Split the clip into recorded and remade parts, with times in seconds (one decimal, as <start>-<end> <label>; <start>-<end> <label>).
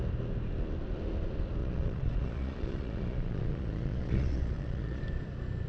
0.0-1.6 recorded; 1.6-5.0 remade; 5.0-5.7 recorded